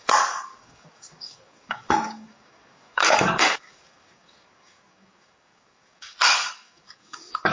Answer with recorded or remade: remade